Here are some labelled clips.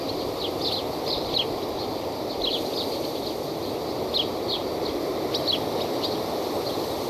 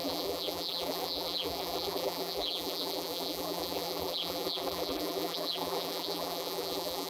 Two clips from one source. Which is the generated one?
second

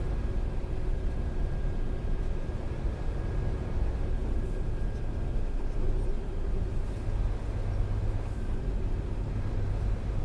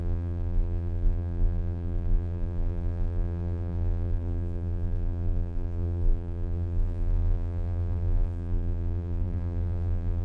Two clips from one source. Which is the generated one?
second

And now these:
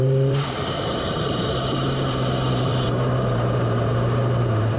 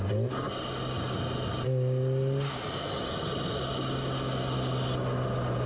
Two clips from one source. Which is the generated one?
first